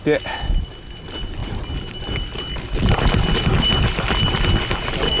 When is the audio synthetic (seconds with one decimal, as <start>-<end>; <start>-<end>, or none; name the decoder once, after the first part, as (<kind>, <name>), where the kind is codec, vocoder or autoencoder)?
1.4-2.5 (vocoder, BigVGAN v2)